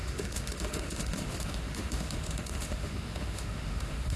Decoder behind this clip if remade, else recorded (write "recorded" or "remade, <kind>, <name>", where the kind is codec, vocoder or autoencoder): remade, autoencoder, DAC-VAE